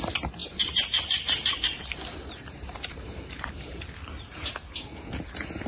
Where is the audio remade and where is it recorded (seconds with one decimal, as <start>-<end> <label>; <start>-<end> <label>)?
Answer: 0.0-0.4 recorded; 0.4-3.8 remade; 3.8-5.7 recorded